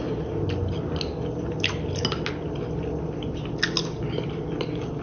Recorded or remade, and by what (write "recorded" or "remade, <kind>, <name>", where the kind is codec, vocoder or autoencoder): recorded